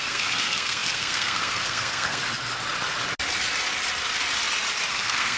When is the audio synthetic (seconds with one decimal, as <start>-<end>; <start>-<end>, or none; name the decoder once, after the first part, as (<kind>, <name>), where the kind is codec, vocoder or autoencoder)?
0.0-2.2 (codec, SNAC); 4.9-5.4